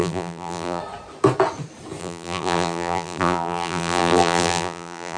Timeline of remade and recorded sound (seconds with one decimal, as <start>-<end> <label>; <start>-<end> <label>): 0.0-0.8 remade; 0.8-2.0 recorded; 2.0-5.2 remade